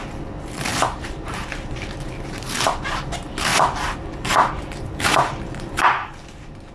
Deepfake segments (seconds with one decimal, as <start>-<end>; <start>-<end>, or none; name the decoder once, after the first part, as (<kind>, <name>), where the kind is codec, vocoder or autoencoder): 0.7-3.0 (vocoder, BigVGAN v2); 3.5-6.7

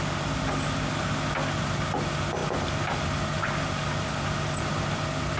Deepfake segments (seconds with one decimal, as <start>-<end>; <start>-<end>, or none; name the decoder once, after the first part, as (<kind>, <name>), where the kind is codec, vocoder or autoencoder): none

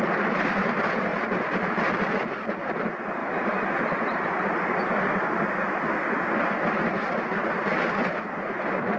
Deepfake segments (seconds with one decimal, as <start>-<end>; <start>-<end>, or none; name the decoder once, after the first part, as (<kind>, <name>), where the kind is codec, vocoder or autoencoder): 3.2-4.7 (vocoder, BigVGAN v2)

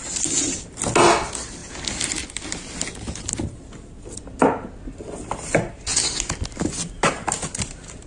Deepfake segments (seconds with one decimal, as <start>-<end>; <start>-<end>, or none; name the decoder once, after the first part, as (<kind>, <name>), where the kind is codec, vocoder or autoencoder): none

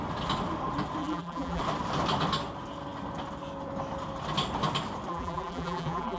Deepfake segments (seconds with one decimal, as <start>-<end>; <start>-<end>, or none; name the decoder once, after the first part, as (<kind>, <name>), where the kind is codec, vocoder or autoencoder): 1.0-1.6 (vocoder, BigVGAN v2); 5.1-6.2

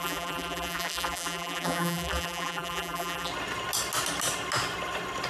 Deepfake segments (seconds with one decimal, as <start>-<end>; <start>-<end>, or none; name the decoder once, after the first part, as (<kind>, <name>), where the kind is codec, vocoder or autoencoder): 0.0-3.3 (vocoder, BigVGAN v2)

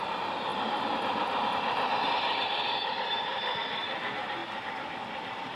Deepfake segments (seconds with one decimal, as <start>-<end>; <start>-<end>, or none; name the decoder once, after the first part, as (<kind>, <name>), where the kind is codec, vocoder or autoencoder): 0.5-3.9 (vocoder, BigVGAN v2); 4.4-5.6